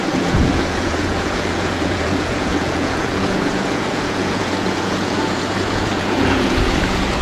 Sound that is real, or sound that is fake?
fake